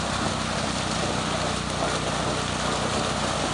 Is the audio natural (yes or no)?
yes